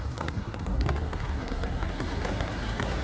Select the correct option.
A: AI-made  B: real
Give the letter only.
A